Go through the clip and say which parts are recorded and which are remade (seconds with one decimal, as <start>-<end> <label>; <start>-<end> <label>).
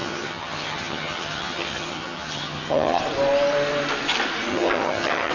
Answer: 0.0-3.0 remade; 3.0-4.5 recorded; 4.5-5.3 remade